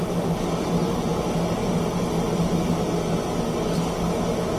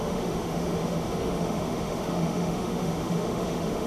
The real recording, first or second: first